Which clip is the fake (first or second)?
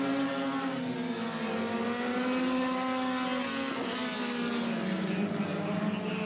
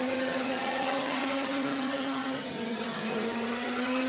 second